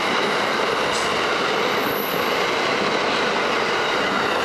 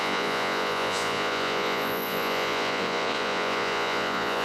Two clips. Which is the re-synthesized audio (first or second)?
second